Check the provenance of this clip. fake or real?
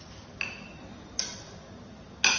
real